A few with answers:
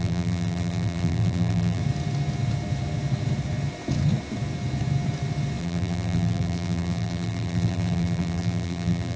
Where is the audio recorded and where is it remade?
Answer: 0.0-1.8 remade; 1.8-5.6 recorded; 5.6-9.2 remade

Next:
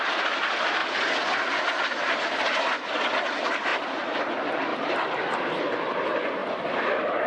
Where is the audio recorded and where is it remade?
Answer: 0.0-0.8 recorded; 0.8-1.6 remade; 1.6-4.7 recorded; 4.7-5.5 remade; 5.5-7.3 recorded

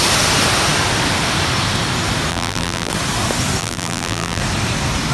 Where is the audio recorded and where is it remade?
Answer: 0.0-2.3 recorded; 2.3-2.9 remade; 2.9-3.6 recorded; 3.6-4.4 remade; 4.4-5.1 recorded

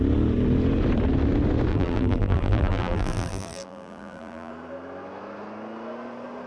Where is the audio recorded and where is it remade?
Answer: 0.0-1.7 recorded; 1.7-4.5 remade; 4.5-6.5 recorded

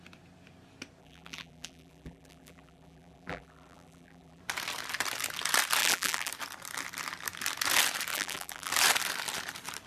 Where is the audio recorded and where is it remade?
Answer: 0.0-1.0 recorded; 1.0-4.4 remade; 4.4-5.8 recorded; 5.8-6.3 remade; 6.3-8.1 recorded; 8.1-8.7 remade; 8.7-9.9 recorded

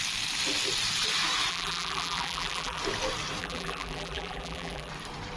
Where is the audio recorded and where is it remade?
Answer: 0.0-1.5 recorded; 1.5-2.8 remade; 2.8-3.4 recorded; 3.4-4.9 remade; 4.9-5.4 recorded